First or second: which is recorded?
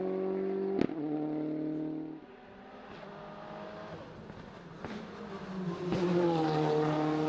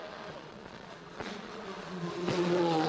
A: first